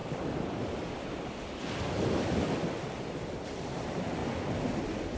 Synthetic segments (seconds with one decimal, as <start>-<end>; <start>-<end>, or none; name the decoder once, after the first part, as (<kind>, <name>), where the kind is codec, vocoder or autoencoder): 3.1-4.2 (vocoder, BigVGAN v2)